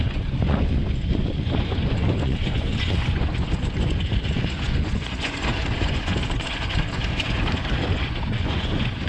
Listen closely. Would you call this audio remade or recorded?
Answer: remade